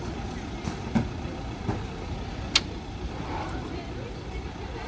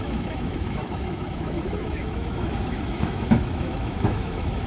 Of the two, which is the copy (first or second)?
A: second